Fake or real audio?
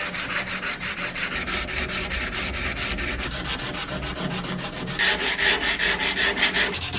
real